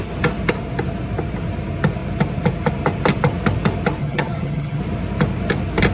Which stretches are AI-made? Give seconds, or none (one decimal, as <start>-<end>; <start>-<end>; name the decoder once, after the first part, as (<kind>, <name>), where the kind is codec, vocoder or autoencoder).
4.0-4.8 (vocoder, HiFi-GAN)